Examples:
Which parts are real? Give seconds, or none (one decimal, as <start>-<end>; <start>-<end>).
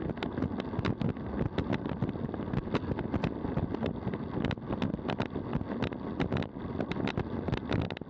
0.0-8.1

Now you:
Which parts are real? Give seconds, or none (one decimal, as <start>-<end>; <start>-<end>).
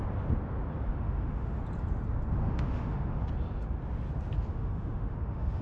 0.0-0.9; 1.6-2.4; 3.2-4.5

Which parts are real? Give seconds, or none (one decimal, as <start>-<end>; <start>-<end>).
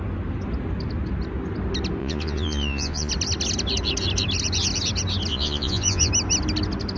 0.0-2.0; 3.1-5.3; 6.1-7.0